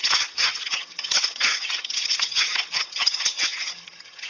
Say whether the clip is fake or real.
fake